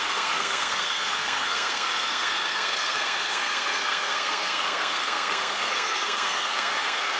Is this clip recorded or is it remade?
remade